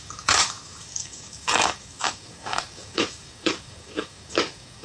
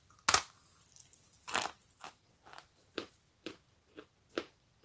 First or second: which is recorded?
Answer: second